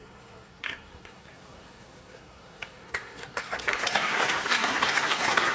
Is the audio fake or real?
fake